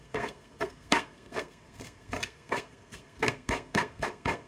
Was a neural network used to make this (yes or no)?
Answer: yes